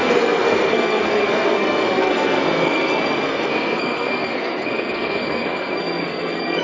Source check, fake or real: fake